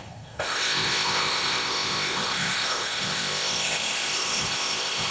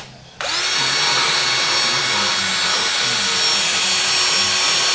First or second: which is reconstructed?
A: first